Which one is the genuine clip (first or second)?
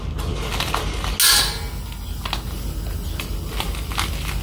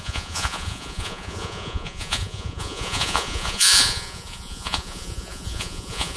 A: first